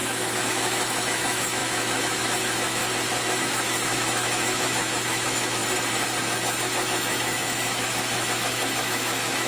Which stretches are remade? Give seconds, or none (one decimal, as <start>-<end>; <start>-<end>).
0.0-2.8; 3.4-5.6; 6.2-9.5